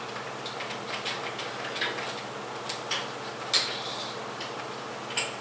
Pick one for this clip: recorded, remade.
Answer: recorded